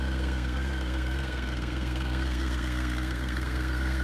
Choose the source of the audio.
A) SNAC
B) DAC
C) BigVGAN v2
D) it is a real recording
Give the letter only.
A